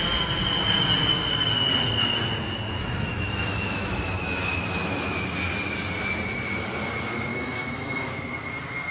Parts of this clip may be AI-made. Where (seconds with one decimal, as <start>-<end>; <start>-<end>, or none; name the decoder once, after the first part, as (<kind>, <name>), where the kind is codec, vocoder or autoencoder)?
2.8-3.9 (autoencoder, DAC-VAE); 7.3-8.1